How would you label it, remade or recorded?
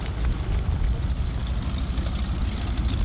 recorded